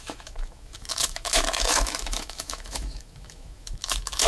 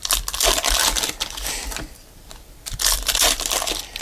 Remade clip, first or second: first